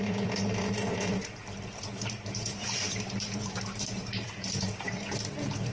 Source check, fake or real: fake